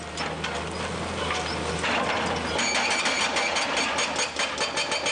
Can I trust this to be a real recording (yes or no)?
yes